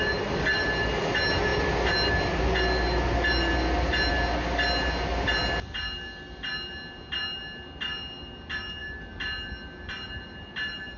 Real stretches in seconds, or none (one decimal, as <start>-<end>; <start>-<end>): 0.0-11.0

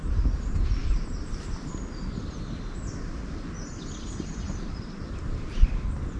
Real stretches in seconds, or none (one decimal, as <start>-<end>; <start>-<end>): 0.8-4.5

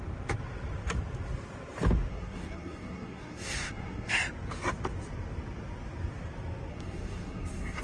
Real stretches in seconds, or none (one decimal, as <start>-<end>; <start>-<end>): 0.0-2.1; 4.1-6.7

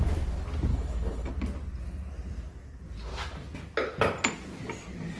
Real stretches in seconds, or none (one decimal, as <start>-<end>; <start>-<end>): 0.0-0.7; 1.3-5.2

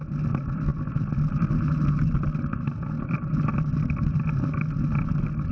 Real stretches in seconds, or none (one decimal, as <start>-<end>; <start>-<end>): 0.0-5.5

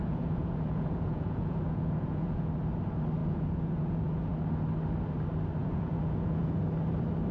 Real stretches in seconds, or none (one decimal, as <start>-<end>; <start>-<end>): 2.5-3.2; 4.3-5.6; 6.6-7.3

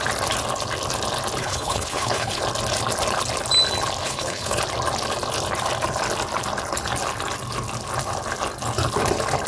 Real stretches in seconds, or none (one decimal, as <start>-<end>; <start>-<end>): 0.0-1.4; 2.4-4.0; 4.6-9.5